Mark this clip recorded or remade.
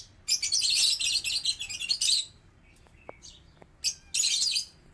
recorded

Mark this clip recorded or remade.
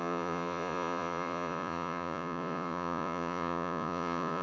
remade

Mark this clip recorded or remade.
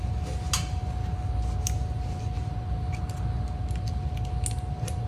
recorded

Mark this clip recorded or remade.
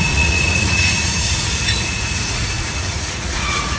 remade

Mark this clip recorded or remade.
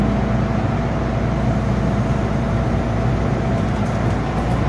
recorded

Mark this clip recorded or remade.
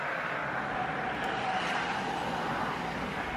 recorded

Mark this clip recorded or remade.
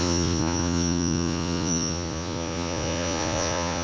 remade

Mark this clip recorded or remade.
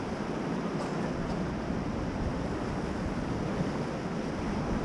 recorded